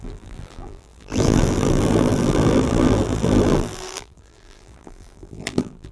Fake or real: fake